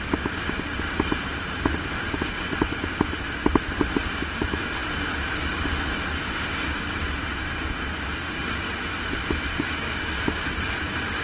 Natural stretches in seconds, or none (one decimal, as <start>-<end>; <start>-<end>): 0.0-9.5; 10.2-11.2